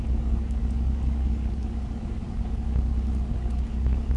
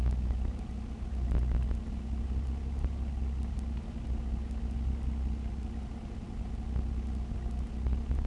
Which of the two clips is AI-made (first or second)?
first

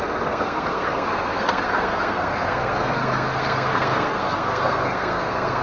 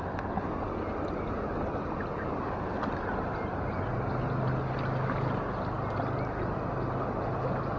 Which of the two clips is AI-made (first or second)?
first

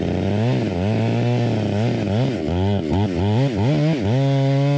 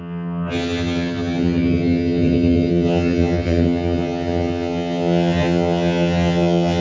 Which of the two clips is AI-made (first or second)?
second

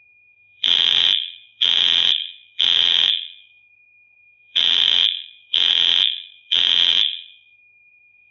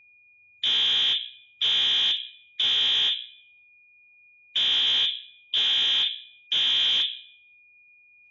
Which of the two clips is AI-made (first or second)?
first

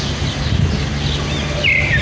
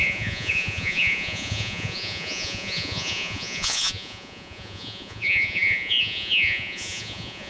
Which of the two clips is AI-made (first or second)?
second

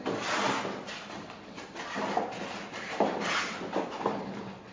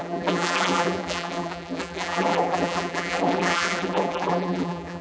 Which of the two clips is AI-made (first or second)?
second